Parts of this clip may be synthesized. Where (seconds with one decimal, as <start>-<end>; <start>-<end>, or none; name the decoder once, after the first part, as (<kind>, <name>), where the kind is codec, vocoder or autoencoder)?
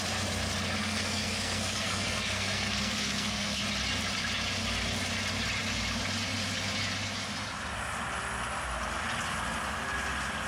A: 0.8-3.6 (codec, SNAC)